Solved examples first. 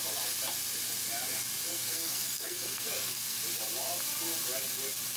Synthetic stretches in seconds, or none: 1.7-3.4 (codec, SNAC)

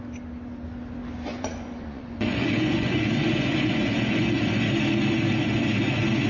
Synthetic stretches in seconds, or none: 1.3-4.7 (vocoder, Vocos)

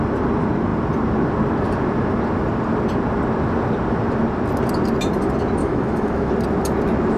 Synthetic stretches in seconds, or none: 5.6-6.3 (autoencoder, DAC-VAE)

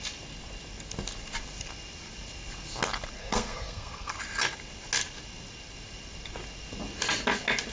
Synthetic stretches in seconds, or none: 3.2-4.1 (codec, SNAC)

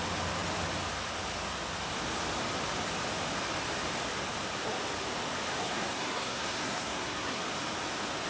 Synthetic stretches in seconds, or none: 5.6-7.4 (codec, SNAC)